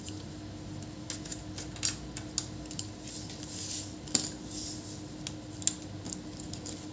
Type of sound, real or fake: real